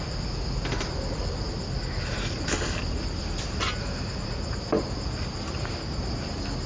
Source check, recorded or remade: recorded